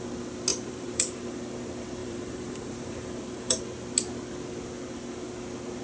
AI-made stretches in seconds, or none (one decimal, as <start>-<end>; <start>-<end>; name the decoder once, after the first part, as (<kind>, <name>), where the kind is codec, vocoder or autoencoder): 0.5-1.2 (vocoder, BigVGAN v2); 2.0-3.6